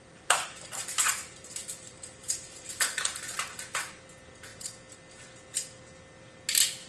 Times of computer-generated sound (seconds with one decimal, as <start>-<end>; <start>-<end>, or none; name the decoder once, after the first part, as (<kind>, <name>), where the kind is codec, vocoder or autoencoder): 0.0-4.1 (vocoder, BigVGAN v2)